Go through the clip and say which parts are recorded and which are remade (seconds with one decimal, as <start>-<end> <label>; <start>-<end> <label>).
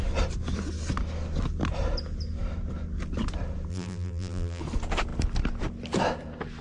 0.0-3.7 recorded; 3.7-4.6 remade; 4.6-6.6 recorded